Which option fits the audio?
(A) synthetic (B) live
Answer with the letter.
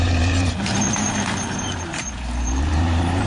A